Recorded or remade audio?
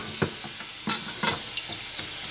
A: recorded